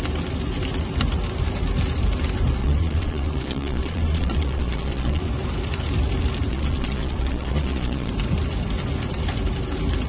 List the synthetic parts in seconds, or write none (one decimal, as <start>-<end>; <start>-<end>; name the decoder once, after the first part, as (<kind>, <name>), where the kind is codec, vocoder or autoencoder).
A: 2.6-5.2 (vocoder, Vocos); 6.5-8.1